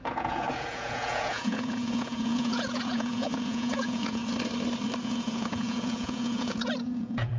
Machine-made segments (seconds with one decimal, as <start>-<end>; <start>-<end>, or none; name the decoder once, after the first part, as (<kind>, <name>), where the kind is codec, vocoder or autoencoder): 0.0-4.2 (vocoder, Vocos); 5.0-7.4

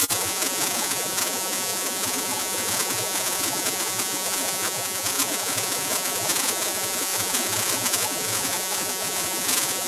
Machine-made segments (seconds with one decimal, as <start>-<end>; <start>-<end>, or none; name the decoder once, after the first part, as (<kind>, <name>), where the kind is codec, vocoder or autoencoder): 0.0-9.9 (vocoder, Vocos)